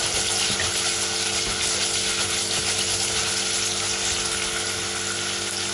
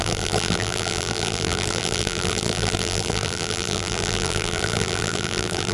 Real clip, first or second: first